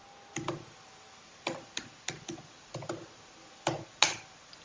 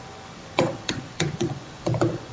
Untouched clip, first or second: first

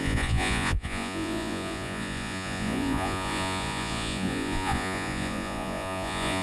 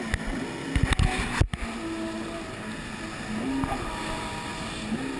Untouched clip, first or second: second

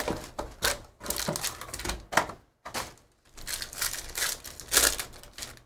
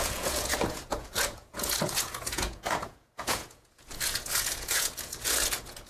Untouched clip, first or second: first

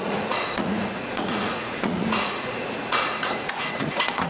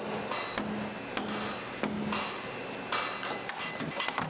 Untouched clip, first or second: second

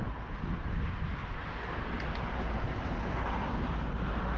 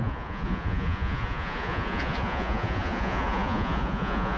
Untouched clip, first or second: first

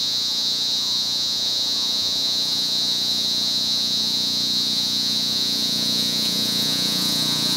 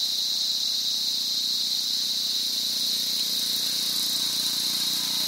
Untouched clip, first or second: second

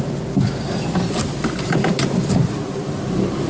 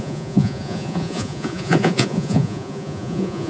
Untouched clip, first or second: first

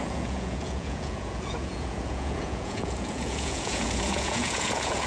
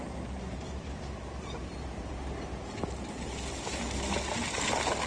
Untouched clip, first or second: second